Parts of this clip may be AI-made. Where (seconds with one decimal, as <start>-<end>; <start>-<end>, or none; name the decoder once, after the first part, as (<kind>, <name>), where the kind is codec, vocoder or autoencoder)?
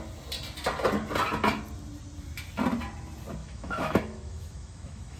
3.4-5.2 (autoencoder, DAC-VAE)